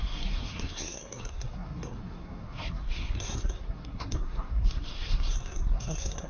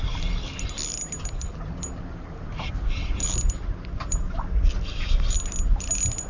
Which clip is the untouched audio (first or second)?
second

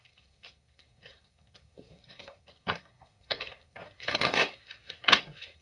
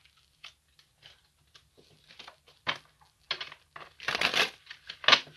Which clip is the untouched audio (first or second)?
second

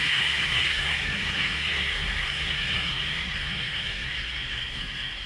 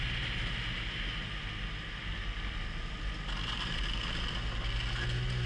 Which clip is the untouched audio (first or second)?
second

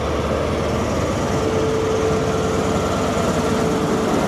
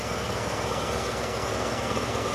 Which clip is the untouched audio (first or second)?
first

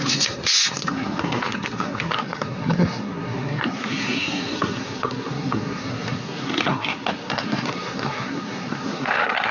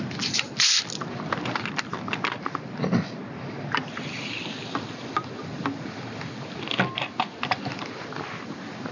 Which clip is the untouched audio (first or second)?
second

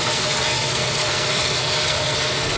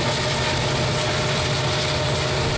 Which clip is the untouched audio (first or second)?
second